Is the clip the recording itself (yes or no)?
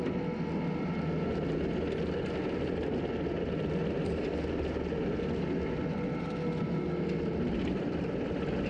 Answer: yes